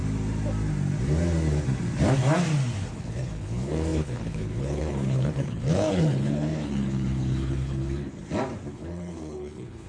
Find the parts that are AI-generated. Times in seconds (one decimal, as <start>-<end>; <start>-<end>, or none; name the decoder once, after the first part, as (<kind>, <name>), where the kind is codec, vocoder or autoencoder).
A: 2.9-8.2 (codec, HILCodec); 8.7-9.9